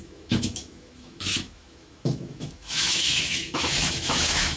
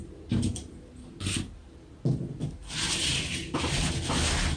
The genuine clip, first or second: second